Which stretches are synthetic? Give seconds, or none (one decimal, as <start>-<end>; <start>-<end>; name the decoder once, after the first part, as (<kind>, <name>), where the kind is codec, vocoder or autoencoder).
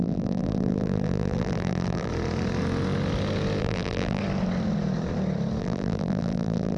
0.0-2.1 (vocoder, BigVGAN v2); 3.6-4.2; 5.6-6.8